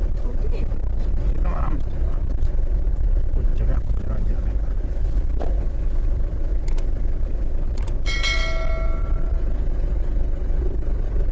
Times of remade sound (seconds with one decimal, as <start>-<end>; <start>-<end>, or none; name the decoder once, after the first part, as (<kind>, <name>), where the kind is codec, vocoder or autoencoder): 1.6-3.5 (vocoder, BigVGAN v2); 4.7-6.5; 7.2-8.4; 9.0-11.3